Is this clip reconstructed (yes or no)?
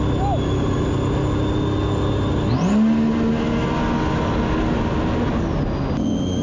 no